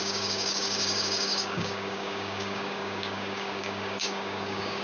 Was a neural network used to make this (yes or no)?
yes